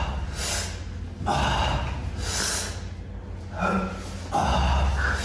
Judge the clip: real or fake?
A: real